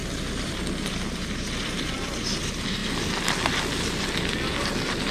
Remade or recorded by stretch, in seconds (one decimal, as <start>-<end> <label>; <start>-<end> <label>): 0.0-2.4 remade; 2.4-5.1 recorded